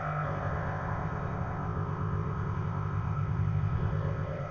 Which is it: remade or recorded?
remade